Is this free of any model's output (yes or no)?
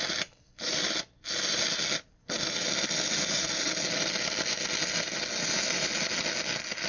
yes